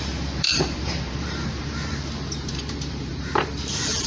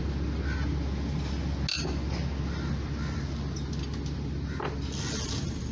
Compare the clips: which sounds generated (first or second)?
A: first